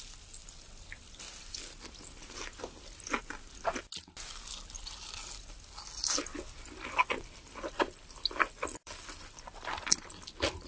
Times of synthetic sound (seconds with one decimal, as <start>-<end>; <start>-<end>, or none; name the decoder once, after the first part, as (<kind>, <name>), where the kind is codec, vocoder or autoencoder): 7.0-8.9 (vocoder, BigVGAN v2)